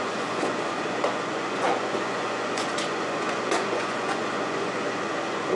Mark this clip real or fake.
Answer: fake